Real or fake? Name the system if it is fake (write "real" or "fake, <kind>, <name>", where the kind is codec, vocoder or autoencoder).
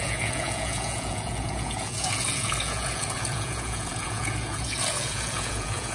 fake, vocoder, Vocos